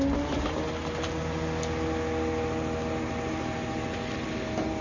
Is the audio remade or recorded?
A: recorded